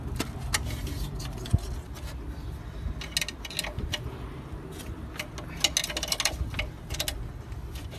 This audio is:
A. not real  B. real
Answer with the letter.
B